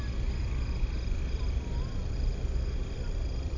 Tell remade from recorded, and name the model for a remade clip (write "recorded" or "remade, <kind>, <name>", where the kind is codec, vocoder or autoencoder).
recorded